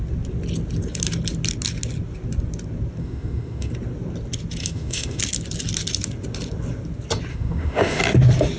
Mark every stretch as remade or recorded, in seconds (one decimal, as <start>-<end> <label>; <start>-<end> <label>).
0.0-3.0 recorded; 3.0-3.7 remade; 3.7-4.6 recorded; 4.6-5.2 remade; 5.2-7.3 recorded; 7.3-8.0 remade; 8.0-8.6 recorded